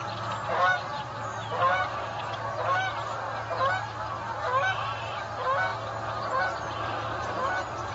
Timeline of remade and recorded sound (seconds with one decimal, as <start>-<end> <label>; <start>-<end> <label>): 0.0-7.9 recorded

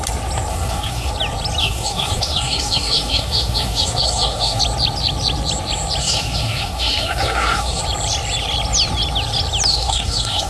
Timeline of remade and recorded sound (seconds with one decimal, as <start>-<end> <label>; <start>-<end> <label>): 0.0-0.5 recorded; 0.5-1.1 remade; 1.1-1.6 recorded; 1.6-4.6 remade; 4.6-6.0 recorded; 6.0-7.8 remade; 7.8-9.7 recorded; 9.7-10.5 remade

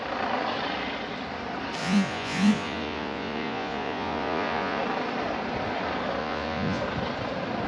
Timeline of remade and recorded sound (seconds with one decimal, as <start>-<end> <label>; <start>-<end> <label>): 0.0-1.8 recorded; 1.8-4.8 remade; 4.8-6.2 recorded; 6.2-6.8 remade; 6.8-7.7 recorded

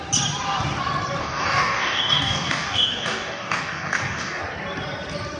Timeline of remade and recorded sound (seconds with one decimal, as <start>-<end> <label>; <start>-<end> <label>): 0.0-1.2 recorded; 1.2-4.4 remade; 4.4-5.4 recorded

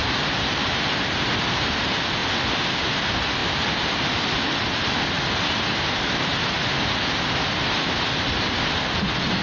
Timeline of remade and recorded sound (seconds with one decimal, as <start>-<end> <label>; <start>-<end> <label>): 0.0-2.2 remade; 2.2-2.8 recorded; 2.8-9.4 remade